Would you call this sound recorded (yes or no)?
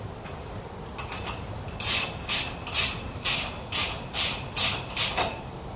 yes